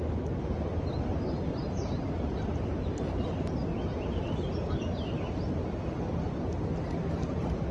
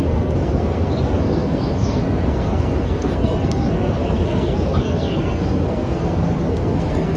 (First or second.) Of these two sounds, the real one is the first